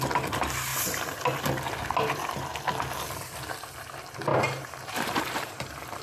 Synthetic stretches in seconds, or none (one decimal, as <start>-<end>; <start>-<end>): 4.3-5.6